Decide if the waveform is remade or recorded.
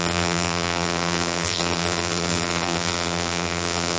remade